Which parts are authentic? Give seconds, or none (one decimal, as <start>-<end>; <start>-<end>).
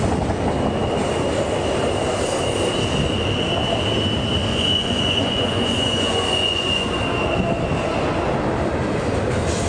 0.0-4.5; 7.0-9.7